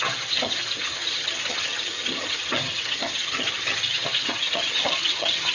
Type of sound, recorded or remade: remade